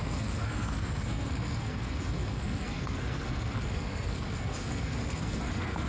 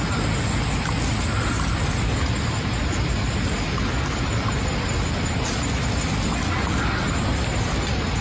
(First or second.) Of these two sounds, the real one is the second